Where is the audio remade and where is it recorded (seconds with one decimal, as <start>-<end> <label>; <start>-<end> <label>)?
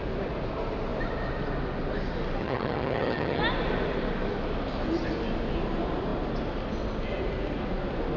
0.0-2.4 recorded; 2.4-3.4 remade; 3.4-8.2 recorded